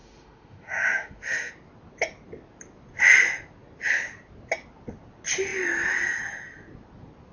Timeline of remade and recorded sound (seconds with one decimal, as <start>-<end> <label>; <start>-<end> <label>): 0.0-1.5 remade; 1.5-7.3 recorded

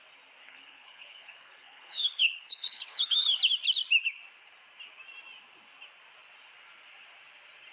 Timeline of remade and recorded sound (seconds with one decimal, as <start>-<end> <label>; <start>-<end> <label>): 0.0-0.4 recorded; 0.4-3.4 remade; 3.4-7.7 recorded

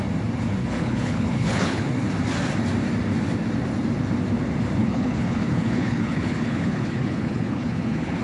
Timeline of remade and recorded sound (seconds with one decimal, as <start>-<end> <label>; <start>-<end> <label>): 0.0-0.6 recorded; 0.6-1.9 remade; 1.9-4.8 recorded; 4.8-8.2 remade

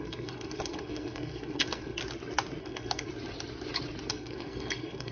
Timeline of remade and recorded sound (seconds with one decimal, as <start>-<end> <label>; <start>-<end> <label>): 0.0-2.0 remade; 2.0-2.6 recorded; 2.6-3.1 remade; 3.1-4.1 recorded; 4.1-5.1 remade